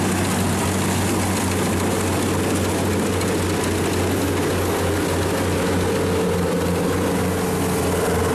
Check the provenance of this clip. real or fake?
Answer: real